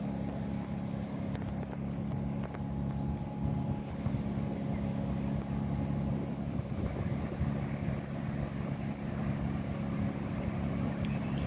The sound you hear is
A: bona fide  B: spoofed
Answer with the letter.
A